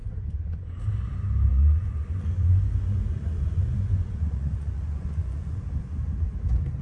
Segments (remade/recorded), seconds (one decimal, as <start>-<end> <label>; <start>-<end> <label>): 0.0-0.8 remade; 0.8-1.5 recorded; 1.5-5.6 remade; 5.6-6.8 recorded

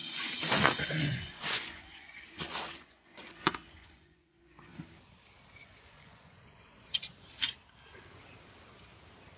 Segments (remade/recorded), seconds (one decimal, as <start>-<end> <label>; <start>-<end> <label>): 0.0-4.8 remade; 4.8-5.6 recorded; 5.6-7.1 remade; 7.1-9.4 recorded